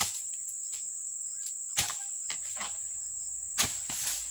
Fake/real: real